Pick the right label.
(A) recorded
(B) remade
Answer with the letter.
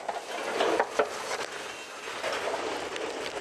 A